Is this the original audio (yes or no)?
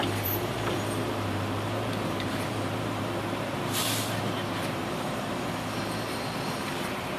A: no